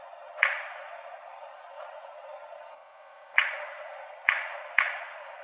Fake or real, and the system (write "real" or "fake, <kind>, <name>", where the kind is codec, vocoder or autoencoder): fake, vocoder, Vocos